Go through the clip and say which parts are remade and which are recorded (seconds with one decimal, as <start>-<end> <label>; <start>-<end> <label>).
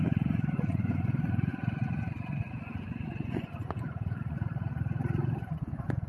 0.0-6.1 remade